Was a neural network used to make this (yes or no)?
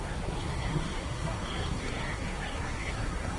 yes